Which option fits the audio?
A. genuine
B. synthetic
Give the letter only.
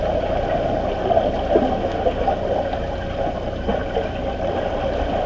A